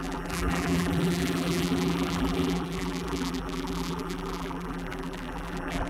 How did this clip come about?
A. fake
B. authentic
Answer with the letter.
A